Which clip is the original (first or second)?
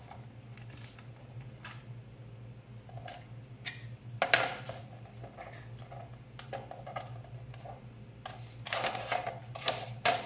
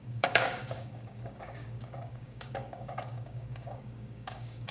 first